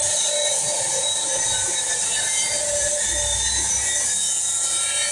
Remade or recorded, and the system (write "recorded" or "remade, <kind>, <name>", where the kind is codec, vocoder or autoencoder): remade, vocoder, BigVGAN v2